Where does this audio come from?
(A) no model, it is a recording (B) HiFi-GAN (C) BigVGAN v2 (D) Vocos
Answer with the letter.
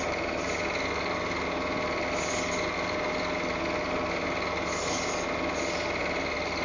A